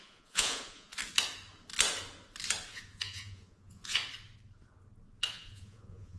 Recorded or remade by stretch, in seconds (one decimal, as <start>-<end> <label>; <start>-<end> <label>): 0.0-1.0 remade; 1.0-2.7 recorded; 2.7-4.0 remade; 4.0-5.3 recorded; 5.3-6.2 remade